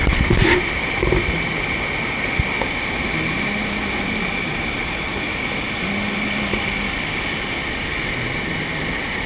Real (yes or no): yes